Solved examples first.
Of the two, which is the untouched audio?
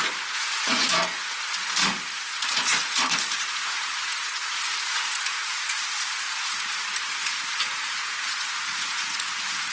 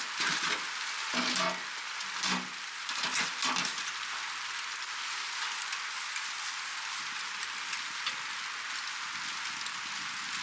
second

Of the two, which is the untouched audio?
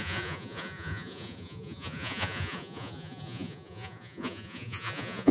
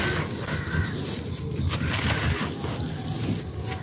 second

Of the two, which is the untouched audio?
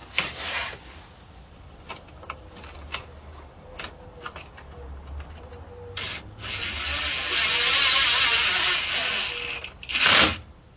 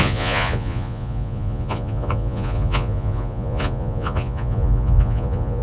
first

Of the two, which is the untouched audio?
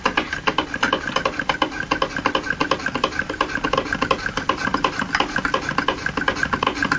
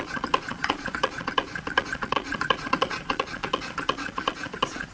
first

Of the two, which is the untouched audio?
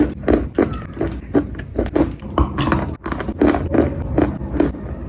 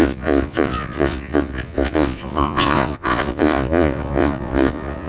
first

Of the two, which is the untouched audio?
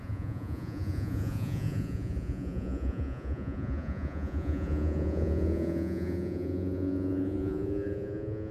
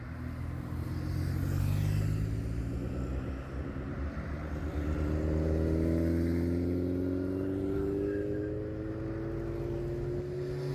second